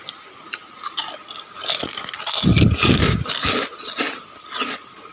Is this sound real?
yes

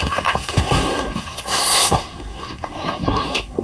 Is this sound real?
no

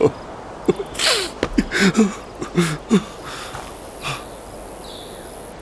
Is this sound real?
yes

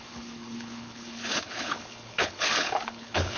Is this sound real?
no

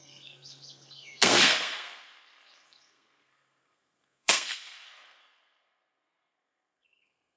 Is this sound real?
no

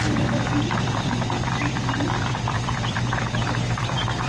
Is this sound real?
no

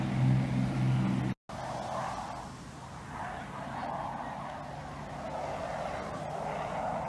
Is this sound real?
yes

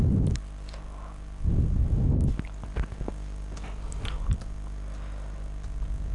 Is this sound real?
yes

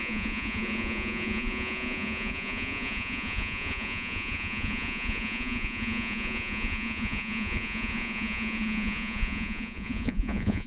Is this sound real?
no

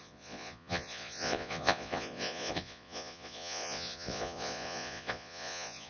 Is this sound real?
no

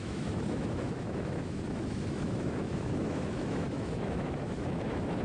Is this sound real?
no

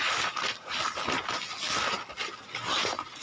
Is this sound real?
yes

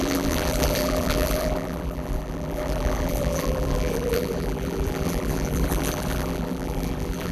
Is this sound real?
no